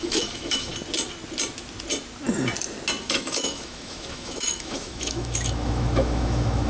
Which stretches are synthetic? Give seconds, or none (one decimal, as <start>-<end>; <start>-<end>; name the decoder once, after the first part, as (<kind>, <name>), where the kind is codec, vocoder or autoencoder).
0.0-0.7 (autoencoder, DAC-VAE); 3.0-6.7